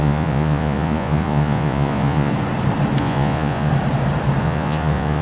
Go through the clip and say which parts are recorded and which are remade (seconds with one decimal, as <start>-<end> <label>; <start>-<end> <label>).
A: 0.0-2.3 remade; 2.3-3.0 recorded; 3.0-3.7 remade; 3.7-4.4 recorded; 4.4-5.2 remade